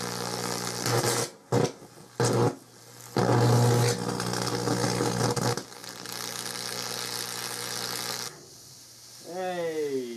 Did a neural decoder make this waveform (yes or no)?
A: no